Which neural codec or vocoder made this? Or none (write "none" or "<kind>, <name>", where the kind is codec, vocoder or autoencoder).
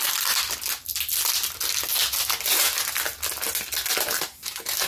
none